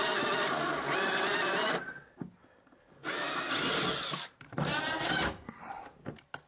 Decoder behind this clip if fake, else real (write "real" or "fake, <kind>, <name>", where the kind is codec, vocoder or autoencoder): real